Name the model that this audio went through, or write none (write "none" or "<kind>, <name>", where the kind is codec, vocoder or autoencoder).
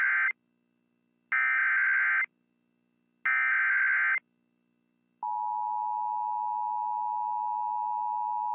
none